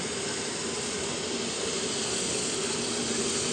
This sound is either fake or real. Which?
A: real